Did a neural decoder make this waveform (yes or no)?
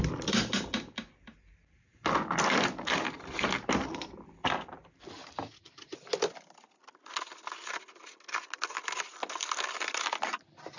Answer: no